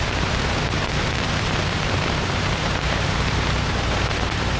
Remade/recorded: remade